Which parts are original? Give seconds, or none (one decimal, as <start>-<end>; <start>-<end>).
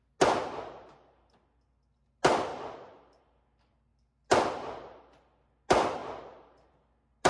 0.0-7.3